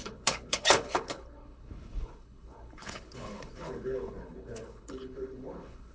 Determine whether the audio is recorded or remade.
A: remade